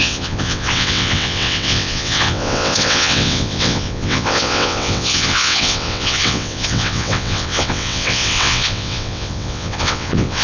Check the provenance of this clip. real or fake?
fake